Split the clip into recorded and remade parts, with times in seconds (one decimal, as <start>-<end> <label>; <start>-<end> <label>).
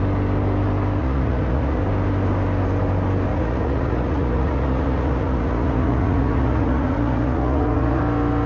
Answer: 0.0-1.0 recorded; 1.0-1.8 remade; 1.8-3.3 recorded; 3.3-8.0 remade; 8.0-8.5 recorded